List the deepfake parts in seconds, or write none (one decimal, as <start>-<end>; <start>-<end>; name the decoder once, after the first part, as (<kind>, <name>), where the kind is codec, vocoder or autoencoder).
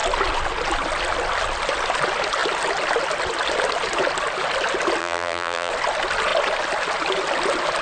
5.0-5.7 (vocoder, BigVGAN v2)